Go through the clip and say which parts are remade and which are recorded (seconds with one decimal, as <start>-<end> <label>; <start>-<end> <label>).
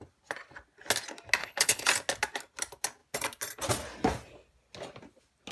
0.0-1.4 recorded; 1.4-1.9 remade; 1.9-5.5 recorded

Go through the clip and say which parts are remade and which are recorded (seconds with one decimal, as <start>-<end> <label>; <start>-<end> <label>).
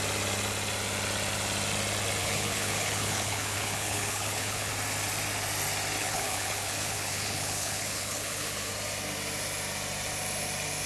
0.0-2.2 recorded; 2.2-4.7 remade; 4.7-6.0 recorded; 6.0-8.7 remade; 8.7-10.9 recorded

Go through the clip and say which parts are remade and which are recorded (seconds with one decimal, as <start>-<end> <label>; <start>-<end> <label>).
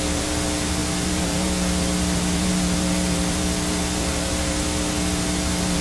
0.0-5.8 recorded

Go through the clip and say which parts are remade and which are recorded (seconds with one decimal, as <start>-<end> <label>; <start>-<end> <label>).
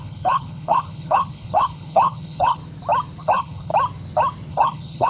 0.0-2.6 remade; 2.6-3.2 recorded; 3.2-3.7 remade; 3.7-4.5 recorded; 4.5-5.1 remade